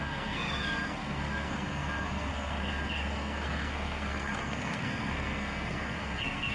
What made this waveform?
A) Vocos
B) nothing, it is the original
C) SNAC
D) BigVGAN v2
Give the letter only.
C